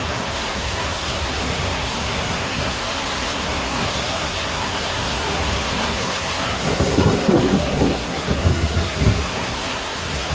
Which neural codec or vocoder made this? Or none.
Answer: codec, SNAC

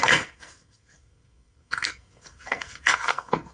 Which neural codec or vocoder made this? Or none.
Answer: codec, SNAC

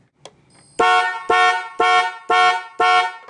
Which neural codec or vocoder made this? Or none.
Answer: none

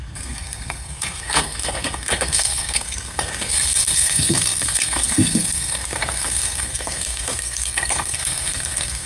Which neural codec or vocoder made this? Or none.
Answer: codec, SNAC